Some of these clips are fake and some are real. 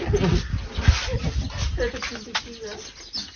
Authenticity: real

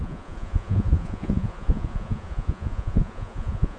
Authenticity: fake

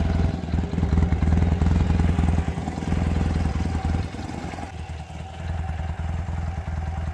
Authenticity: real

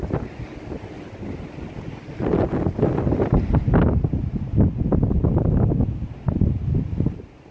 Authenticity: real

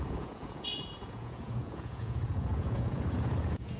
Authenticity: fake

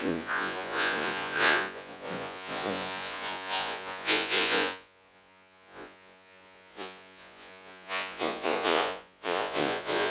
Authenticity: fake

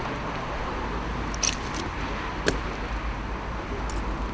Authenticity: real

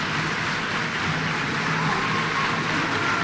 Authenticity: real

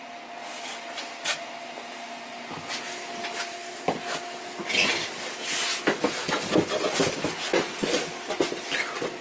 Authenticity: real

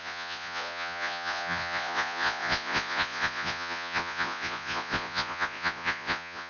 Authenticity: fake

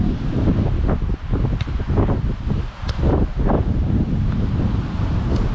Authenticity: real